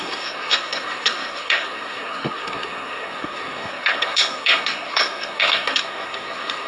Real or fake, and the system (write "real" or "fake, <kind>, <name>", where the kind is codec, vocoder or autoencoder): fake, codec, SNAC